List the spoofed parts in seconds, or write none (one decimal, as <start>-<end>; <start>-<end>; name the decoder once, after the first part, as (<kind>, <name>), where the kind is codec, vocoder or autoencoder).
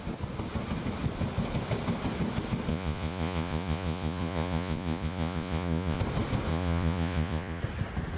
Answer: 2.7-6.0 (vocoder, Vocos); 6.5-7.6